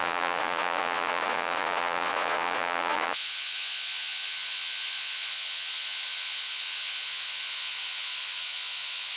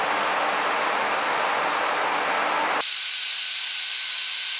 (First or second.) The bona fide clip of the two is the second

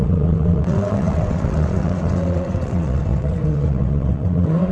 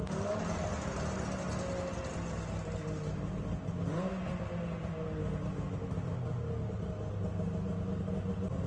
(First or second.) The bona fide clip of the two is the second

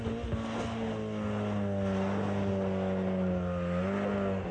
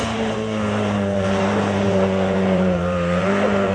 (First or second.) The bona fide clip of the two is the first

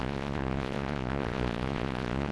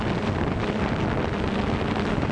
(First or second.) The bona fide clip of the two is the second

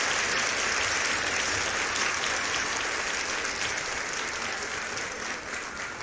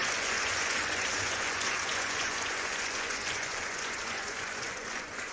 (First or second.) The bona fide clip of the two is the first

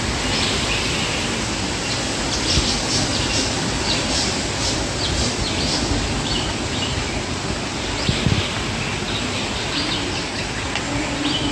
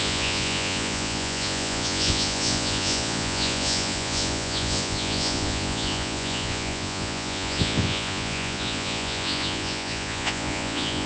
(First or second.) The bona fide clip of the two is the first